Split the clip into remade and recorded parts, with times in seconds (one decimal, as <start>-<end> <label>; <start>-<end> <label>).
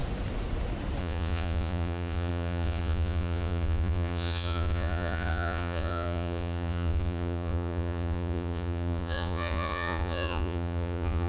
0.0-1.0 recorded; 1.0-11.3 remade